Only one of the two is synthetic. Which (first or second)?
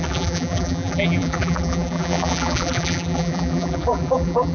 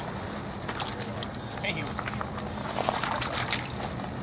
first